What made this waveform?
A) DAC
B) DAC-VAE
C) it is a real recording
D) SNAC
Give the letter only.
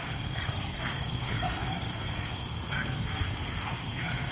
D